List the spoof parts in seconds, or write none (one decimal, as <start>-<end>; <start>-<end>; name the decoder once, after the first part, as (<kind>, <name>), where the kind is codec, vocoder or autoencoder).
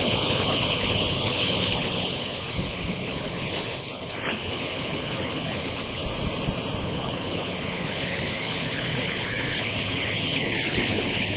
0.0-6.0 (codec, HILCodec); 6.8-11.4